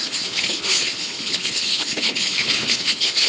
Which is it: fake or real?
fake